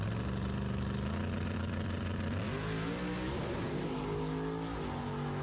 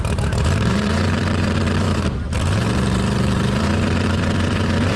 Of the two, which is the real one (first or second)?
first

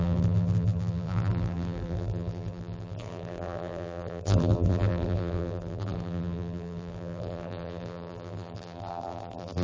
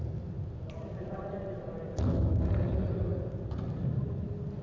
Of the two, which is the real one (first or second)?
second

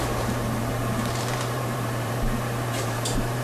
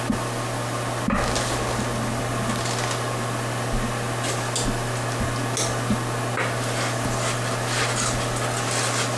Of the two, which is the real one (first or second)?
second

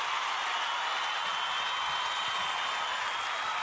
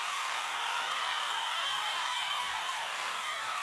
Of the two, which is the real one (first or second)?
first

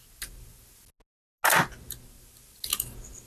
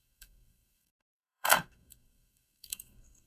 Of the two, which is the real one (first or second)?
first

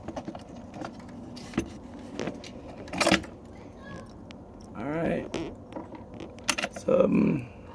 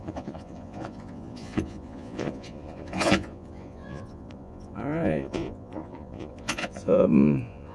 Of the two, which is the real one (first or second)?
first